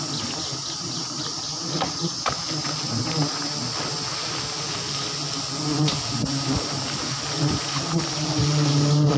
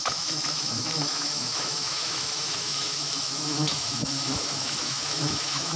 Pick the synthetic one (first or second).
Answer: second